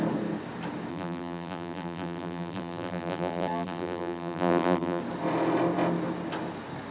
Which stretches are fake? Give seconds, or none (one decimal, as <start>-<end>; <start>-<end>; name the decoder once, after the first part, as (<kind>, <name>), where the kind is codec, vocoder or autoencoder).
0.9-5.0 (vocoder, BigVGAN v2)